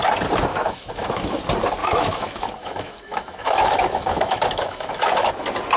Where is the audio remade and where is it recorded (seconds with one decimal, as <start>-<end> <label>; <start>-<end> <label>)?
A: 0.0-0.5 recorded; 0.5-1.4 remade; 1.4-1.8 recorded; 1.8-5.3 remade; 5.3-5.8 recorded